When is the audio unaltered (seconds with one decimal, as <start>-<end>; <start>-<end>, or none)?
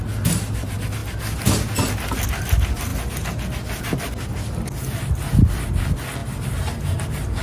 0.0-7.4